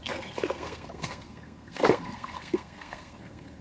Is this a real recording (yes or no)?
no